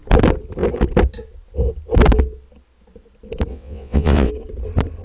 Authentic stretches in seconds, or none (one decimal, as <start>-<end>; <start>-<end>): 0.0-3.5; 4.3-5.0